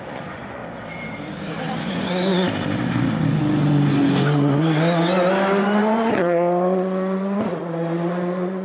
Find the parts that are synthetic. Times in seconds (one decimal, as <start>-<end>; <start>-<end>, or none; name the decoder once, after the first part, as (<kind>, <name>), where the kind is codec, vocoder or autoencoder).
0.0-0.6 (vocoder, Vocos); 1.8-2.3; 5.6-8.6